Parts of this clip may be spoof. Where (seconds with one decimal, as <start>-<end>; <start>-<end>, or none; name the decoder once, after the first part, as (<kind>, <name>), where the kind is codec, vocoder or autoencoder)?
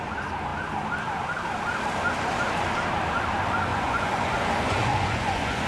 3.7-5.7 (vocoder, Vocos)